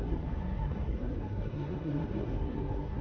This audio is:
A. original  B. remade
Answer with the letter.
B